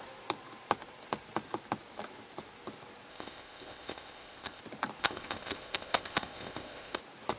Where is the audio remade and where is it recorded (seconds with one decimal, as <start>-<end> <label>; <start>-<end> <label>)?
0.0-3.1 recorded; 3.1-4.6 remade; 4.6-5.0 recorded; 5.0-7.0 remade; 7.0-7.4 recorded